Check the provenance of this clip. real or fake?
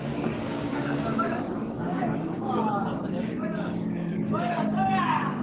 fake